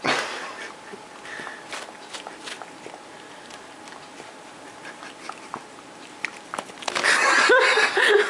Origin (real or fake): real